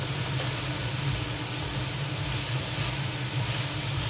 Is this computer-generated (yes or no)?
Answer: no